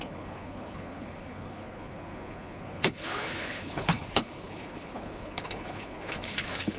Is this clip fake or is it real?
fake